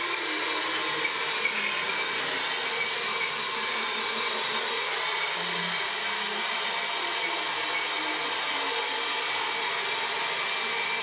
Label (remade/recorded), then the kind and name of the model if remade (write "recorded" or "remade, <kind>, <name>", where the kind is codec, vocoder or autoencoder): recorded